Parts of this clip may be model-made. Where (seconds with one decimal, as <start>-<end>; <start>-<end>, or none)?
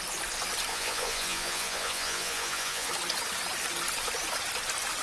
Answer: 0.7-2.9